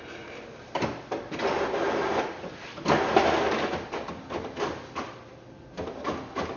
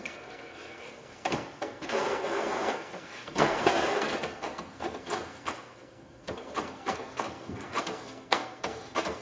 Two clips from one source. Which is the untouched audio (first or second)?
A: first